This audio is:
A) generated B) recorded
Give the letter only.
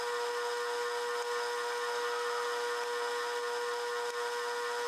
B